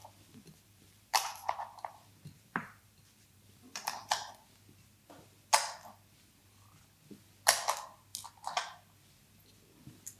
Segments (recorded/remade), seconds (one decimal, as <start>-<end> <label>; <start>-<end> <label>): 0.0-4.3 remade; 4.3-10.2 recorded